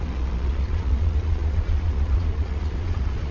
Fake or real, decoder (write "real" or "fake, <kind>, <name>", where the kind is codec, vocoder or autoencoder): fake, vocoder, Vocos